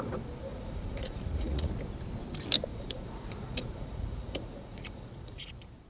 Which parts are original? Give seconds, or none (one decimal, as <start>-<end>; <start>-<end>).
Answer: 0.0-0.5; 1.7-2.7; 5.5-5.9